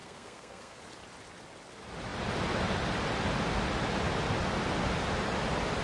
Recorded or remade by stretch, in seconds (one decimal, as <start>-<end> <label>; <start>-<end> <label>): 0.0-0.8 remade; 0.8-5.8 recorded